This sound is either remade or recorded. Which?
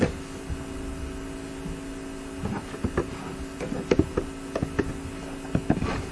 recorded